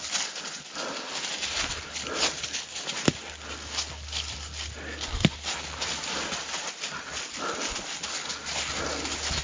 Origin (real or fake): real